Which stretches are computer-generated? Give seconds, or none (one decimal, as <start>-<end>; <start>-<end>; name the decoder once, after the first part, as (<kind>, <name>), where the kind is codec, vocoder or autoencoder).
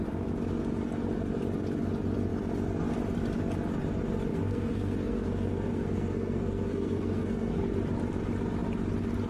4.3-7.6 (codec, SNAC)